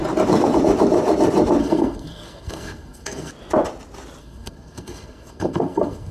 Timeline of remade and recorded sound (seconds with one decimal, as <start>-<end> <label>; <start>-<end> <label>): 0.0-1.6 recorded; 1.6-3.3 remade; 3.3-4.2 recorded; 4.2-6.1 remade